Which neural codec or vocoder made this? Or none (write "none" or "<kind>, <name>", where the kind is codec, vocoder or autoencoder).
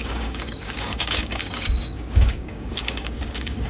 codec, DAC